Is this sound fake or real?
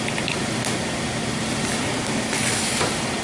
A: real